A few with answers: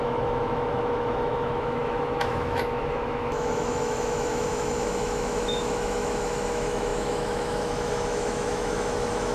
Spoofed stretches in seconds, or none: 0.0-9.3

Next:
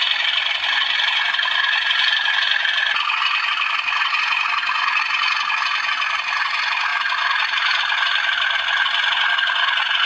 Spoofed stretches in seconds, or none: 6.9-7.8

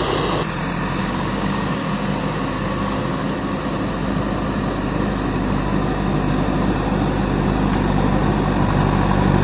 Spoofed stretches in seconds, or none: 1.0-1.9

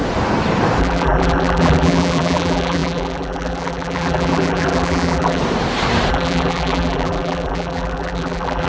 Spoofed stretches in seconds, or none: 0.8-5.4; 6.1-8.7

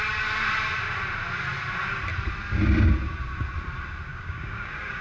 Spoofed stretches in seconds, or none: 4.1-5.0

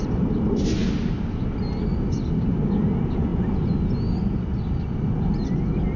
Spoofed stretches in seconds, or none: none

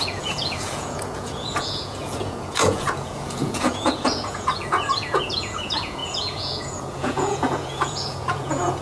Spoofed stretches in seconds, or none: 0.0-8.8